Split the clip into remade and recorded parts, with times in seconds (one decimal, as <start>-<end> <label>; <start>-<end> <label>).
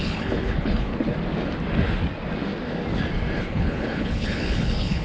0.0-0.9 remade; 0.9-3.4 recorded; 3.4-5.0 remade